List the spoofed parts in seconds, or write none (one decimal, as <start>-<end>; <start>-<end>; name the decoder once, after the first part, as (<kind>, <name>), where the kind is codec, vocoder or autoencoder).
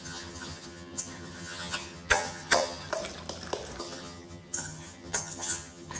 0.0-2.9 (vocoder, HiFi-GAN); 3.8-6.0